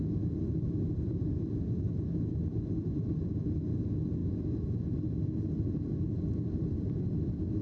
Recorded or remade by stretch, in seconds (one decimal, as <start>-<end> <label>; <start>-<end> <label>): 0.0-4.2 remade; 4.2-5.6 recorded; 5.6-7.6 remade